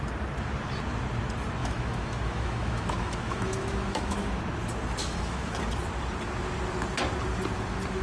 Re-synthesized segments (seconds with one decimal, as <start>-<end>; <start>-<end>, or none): 1.6-4.4; 5.0-5.6